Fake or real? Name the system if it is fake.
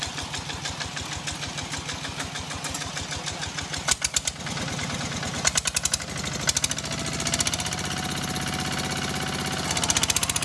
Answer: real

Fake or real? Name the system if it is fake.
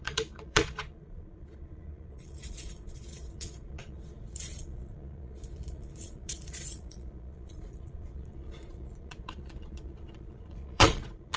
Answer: fake, vocoder, Vocos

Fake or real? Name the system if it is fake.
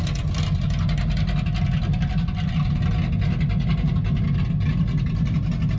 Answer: real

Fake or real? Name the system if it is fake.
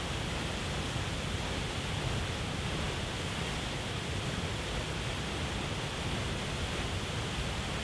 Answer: real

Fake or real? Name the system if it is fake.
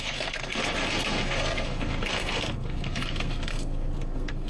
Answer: fake, codec, SNAC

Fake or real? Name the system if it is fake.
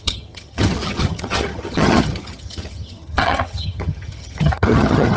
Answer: fake, vocoder, HiFi-GAN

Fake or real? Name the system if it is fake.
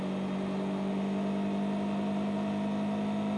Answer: real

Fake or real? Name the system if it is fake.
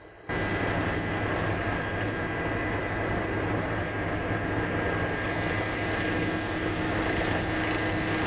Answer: real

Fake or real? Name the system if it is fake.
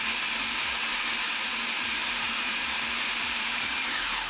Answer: fake, vocoder, BigVGAN v2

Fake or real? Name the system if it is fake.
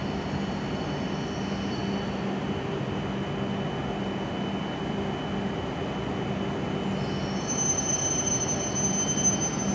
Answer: real